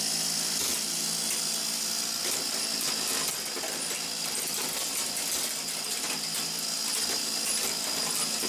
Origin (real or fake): real